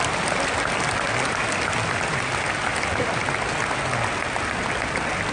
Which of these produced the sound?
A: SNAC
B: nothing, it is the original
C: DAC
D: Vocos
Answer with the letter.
B